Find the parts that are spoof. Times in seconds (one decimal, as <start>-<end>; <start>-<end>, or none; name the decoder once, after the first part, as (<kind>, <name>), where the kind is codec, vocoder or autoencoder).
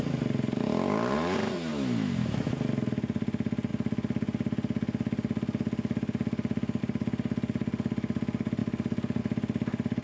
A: 1.7-2.5 (autoencoder, DAC-VAE)